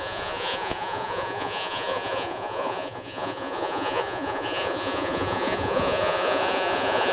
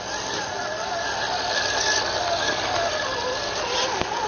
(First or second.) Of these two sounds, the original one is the second